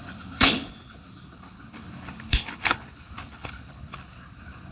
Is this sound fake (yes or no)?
yes